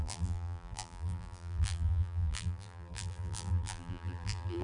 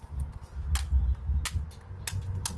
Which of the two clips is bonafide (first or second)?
second